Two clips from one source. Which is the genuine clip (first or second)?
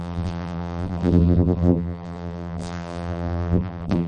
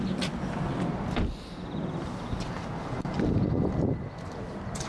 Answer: second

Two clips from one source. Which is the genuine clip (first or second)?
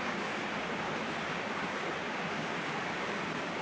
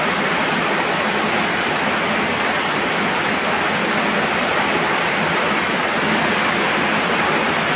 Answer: second